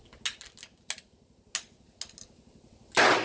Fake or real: real